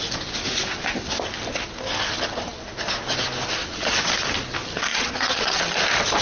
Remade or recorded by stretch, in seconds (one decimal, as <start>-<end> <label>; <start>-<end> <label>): 0.0-3.6 recorded; 3.6-4.1 remade; 4.1-4.9 recorded; 4.9-5.6 remade; 5.6-6.2 recorded